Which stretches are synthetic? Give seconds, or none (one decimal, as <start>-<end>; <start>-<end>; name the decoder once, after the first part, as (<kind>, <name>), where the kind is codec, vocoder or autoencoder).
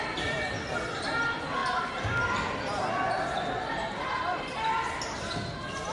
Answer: 0.0-1.6 (vocoder, BigVGAN v2); 2.6-5.9